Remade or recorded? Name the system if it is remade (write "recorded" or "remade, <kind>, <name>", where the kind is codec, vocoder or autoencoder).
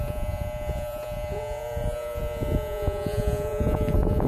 remade, vocoder, Vocos